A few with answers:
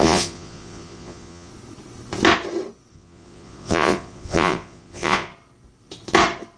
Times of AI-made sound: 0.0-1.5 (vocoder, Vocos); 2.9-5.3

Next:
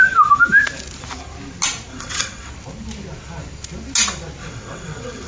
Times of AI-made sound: 1.9-2.5 (vocoder, WaveNeXt); 4.4-5.3

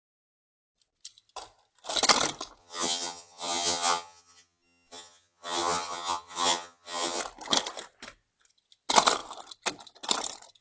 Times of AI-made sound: 2.6-7.2 (vocoder, HiFi-GAN)

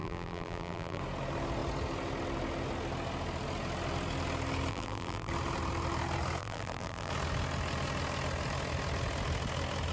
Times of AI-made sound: 0.0-1.0 (vocoder, BigVGAN v2); 4.7-5.3; 6.4-7.1

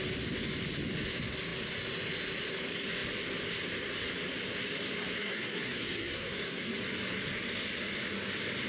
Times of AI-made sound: 5.2-6.8 (codec, SNAC)

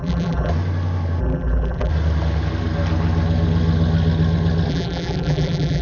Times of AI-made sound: 0.0-0.5 (vocoder, BigVGAN v2); 1.2-1.9; 4.7-5.8